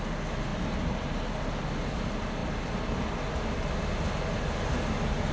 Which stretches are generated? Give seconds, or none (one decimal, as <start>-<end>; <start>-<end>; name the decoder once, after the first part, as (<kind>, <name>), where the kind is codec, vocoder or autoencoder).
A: none